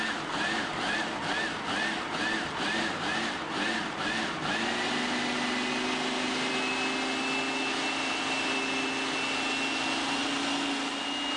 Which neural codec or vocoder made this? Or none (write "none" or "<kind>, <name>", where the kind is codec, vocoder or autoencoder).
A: none